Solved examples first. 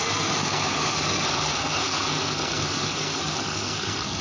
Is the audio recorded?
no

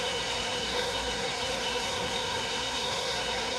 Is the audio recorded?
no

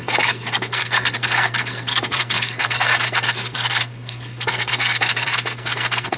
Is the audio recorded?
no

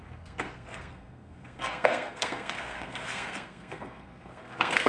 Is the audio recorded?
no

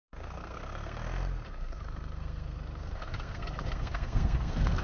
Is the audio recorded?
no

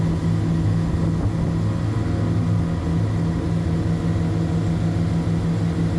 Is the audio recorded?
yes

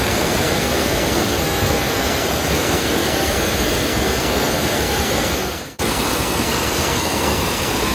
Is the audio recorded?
no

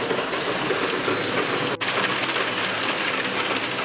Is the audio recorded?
yes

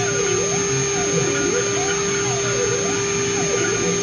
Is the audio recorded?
yes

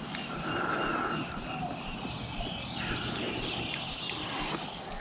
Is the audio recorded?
yes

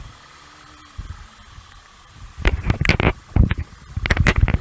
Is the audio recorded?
yes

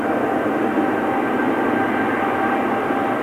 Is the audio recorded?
yes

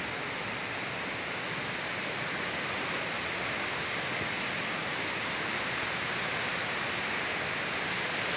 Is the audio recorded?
yes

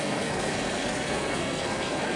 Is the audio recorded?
no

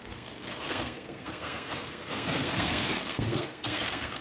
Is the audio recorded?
no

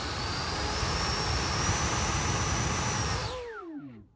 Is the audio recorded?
yes